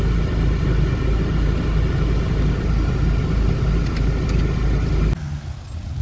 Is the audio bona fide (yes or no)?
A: yes